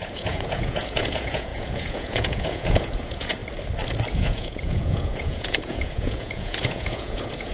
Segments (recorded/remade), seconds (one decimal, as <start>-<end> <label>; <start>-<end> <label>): 0.0-3.4 remade; 3.4-4.1 recorded; 4.1-7.5 remade